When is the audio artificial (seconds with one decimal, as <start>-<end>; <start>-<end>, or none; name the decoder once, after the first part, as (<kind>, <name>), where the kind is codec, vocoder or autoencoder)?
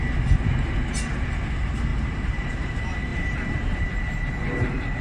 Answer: 1.9-2.7 (vocoder, BigVGAN v2); 3.1-3.8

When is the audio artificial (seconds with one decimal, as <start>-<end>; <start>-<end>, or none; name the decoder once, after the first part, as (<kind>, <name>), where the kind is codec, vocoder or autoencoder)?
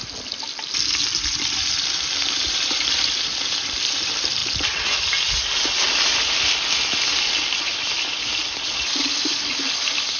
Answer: 1.3-4.4 (vocoder, BigVGAN v2); 7.6-10.2